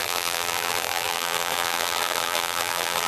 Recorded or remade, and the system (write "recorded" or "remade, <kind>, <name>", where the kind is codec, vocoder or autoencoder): remade, vocoder, BigVGAN v2